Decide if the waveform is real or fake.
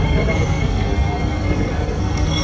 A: fake